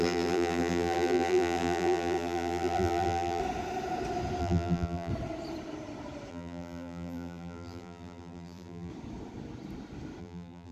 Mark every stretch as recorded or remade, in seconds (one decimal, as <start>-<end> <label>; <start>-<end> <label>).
0.0-3.4 remade; 3.4-4.4 recorded; 4.4-5.1 remade; 5.1-6.3 recorded; 6.3-8.9 remade; 8.9-10.2 recorded; 10.2-10.7 remade

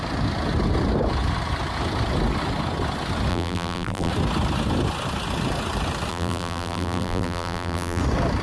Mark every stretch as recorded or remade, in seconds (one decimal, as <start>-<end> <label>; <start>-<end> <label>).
0.0-3.3 recorded; 3.3-4.1 remade; 4.1-6.1 recorded; 6.1-8.0 remade; 8.0-8.4 recorded

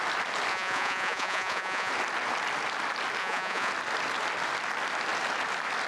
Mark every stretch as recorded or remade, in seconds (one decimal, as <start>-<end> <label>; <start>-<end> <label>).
0.0-0.5 recorded; 0.5-1.9 remade; 1.9-3.2 recorded; 3.2-3.7 remade; 3.7-5.9 recorded

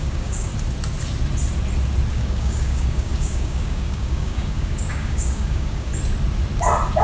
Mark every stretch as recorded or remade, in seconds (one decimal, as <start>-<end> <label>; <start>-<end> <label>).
0.0-0.5 remade; 0.5-2.1 recorded; 2.1-5.9 remade; 5.9-7.0 recorded

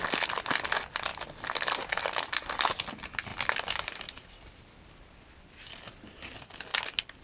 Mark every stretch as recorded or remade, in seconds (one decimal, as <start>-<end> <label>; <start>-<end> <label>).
0.0-7.2 recorded

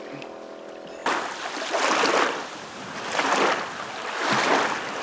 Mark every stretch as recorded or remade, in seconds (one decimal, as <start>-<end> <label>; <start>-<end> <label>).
0.0-5.0 recorded

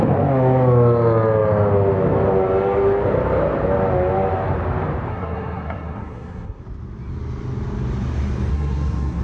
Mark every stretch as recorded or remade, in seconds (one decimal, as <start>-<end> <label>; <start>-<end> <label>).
0.0-5.1 recorded; 5.1-6.6 remade; 6.6-8.5 recorded; 8.5-9.2 remade

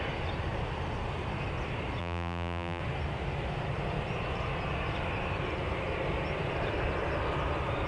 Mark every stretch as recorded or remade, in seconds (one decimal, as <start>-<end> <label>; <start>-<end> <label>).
0.0-2.0 recorded; 2.0-2.8 remade; 2.8-7.9 recorded